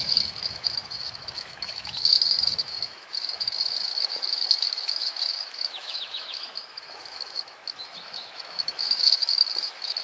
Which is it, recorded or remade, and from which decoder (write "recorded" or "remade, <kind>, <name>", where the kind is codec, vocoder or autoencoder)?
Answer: remade, autoencoder, DAC-VAE